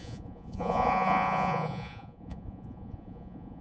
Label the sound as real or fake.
fake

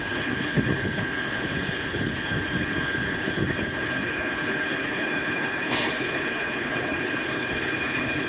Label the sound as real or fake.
fake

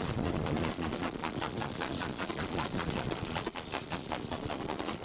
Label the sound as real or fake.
fake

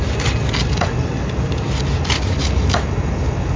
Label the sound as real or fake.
real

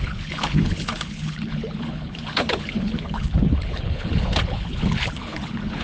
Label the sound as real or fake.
fake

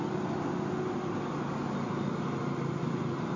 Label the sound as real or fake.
real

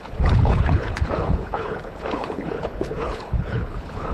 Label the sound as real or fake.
fake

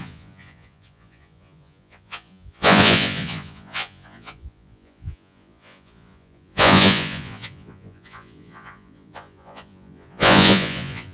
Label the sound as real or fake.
fake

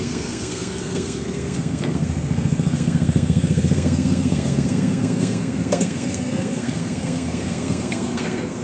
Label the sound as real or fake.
fake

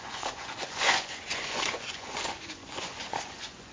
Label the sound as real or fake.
fake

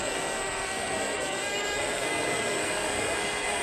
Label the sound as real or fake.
fake